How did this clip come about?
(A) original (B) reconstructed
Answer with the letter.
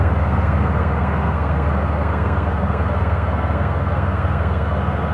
B